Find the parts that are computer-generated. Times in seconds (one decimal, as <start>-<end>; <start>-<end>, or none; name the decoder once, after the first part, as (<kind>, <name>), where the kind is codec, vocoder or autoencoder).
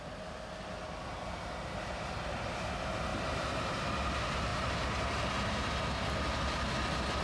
3.1-3.7 (vocoder, BigVGAN v2); 4.5-5.7